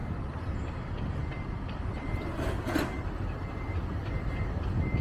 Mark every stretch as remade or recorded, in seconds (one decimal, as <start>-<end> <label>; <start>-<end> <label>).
0.0-5.0 recorded